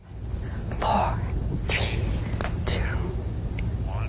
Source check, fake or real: real